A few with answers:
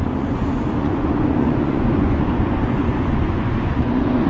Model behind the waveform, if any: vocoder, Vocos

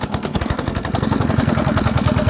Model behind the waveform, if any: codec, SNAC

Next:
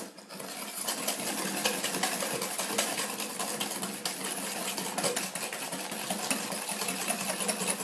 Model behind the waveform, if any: none